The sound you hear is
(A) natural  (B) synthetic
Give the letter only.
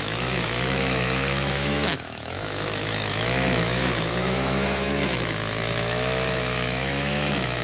B